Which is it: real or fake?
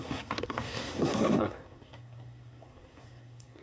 fake